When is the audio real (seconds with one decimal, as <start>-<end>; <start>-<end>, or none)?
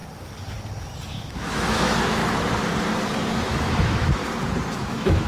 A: 0.0-1.1; 2.2-3.3; 4.2-4.7